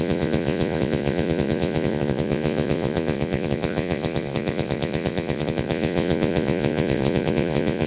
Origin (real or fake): fake